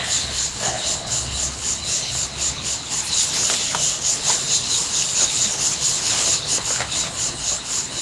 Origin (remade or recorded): remade